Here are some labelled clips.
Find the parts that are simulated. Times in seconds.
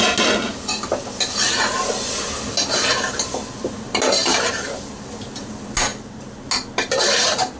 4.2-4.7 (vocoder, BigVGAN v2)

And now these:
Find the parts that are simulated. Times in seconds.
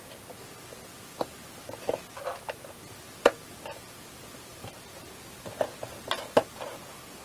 4.5-6.8 (vocoder, BigVGAN v2)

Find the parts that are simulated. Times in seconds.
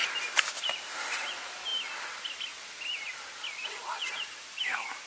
0.7-1.7 (vocoder, BigVGAN v2); 3.8-5.1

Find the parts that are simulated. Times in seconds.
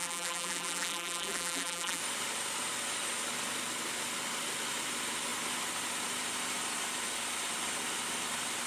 0.0-2.0 (vocoder, BigVGAN v2)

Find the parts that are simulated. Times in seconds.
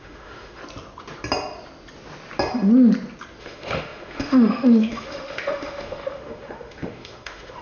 0.0-0.6 (autoencoder, DAC-VAE); 3.4-7.6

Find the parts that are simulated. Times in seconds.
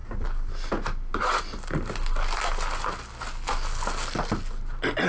none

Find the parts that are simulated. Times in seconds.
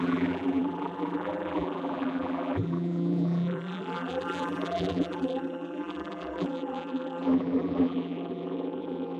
0.0-9.2 (vocoder, BigVGAN v2)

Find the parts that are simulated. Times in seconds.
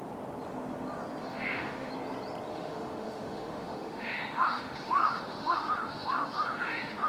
1.2-1.9 (autoencoder, DAC-VAE); 2.5-7.1